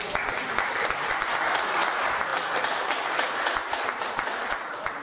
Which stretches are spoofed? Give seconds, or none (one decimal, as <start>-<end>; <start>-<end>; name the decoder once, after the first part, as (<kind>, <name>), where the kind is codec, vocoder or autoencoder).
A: none